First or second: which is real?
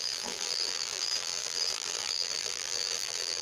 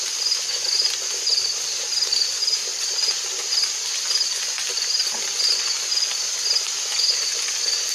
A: second